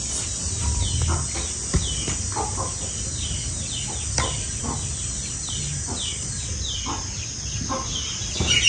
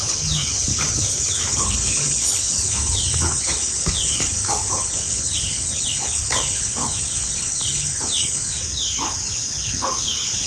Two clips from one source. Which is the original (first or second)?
first